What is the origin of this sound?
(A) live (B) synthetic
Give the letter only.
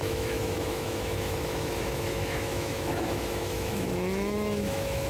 B